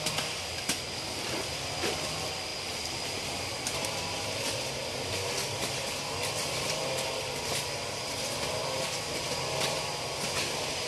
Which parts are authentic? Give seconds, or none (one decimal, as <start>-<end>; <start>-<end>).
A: 0.0-10.9